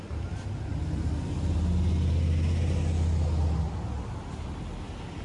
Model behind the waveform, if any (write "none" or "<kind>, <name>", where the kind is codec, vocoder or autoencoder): none